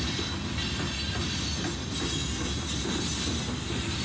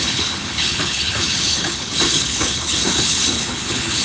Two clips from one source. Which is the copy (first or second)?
second